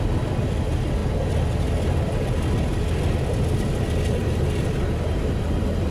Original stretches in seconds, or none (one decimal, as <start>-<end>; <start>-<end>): 0.0-5.9